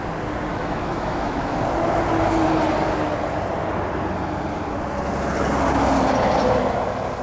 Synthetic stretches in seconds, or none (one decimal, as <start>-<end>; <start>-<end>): 0.5-1.6